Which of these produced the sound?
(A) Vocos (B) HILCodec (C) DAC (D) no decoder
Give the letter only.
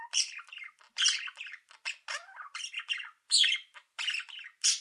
D